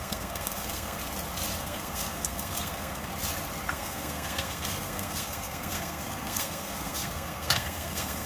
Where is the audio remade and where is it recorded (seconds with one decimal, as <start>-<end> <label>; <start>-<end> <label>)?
0.0-1.0 remade; 1.0-1.6 recorded; 1.6-3.1 remade; 3.1-3.7 recorded; 3.7-8.3 remade